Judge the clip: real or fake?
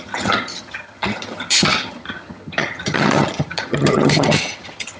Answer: fake